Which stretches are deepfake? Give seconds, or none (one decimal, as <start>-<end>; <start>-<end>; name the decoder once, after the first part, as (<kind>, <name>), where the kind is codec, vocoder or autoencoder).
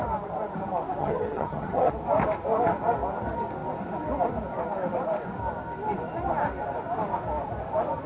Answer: 1.0-1.9 (vocoder, HiFi-GAN)